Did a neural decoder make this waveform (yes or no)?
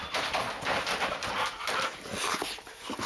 no